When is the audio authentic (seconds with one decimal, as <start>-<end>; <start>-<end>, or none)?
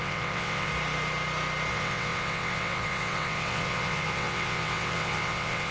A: 0.7-1.7